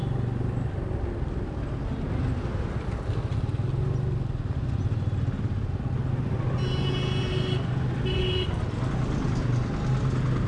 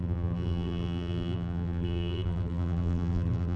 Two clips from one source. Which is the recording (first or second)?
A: first